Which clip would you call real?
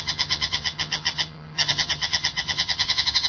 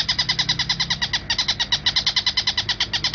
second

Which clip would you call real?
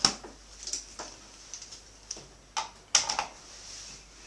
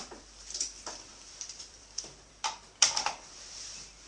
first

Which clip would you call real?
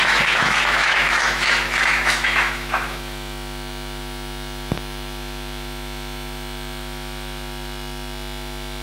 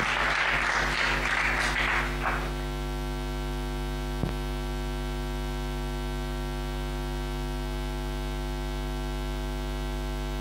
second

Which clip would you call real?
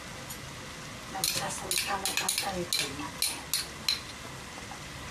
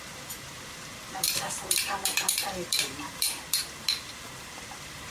first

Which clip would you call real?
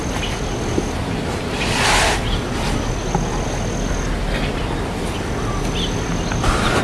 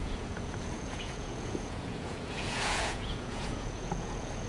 first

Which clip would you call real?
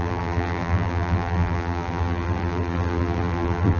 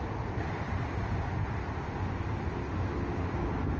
second